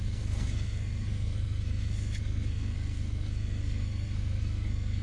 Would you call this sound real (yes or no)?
no